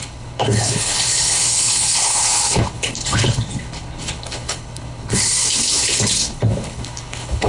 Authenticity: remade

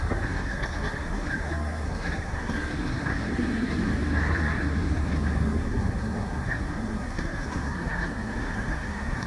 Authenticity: remade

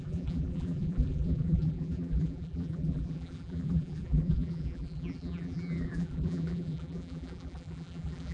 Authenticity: remade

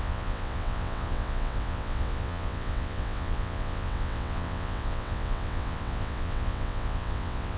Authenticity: remade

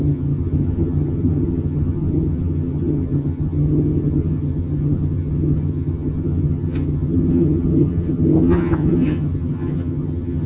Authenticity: remade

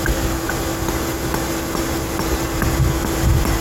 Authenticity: recorded